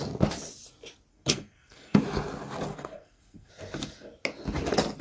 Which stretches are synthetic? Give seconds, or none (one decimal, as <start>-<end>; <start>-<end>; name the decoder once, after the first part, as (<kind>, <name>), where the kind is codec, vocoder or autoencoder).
1.1-2.0 (codec, SNAC); 2.7-3.5